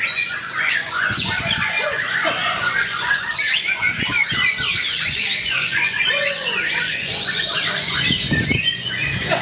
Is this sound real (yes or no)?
no